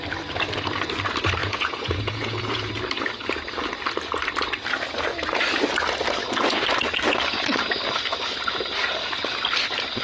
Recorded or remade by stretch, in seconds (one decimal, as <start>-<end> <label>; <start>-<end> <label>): 0.0-1.4 recorded; 1.4-2.7 remade; 2.7-10.0 recorded

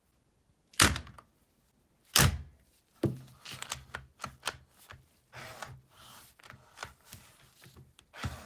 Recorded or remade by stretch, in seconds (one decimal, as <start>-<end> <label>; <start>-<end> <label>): 0.0-8.5 recorded